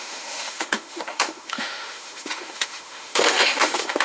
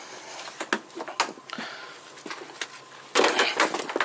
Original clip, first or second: second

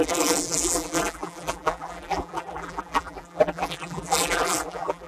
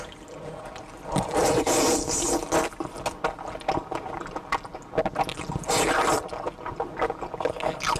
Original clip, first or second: second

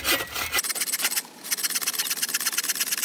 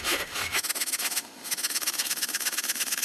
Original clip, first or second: first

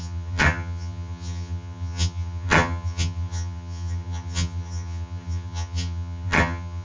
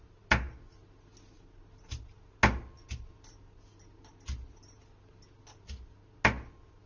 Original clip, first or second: second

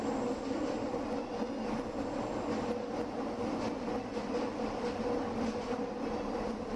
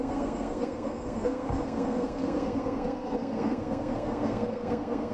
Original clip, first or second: first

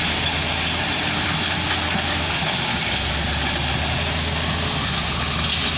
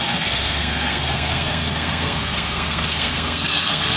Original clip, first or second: first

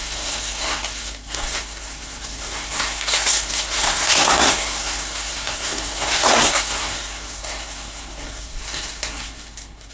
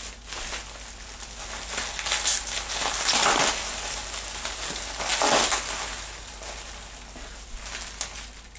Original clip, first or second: second